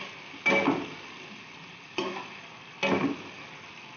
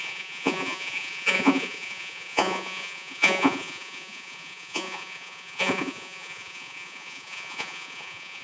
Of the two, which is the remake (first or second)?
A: second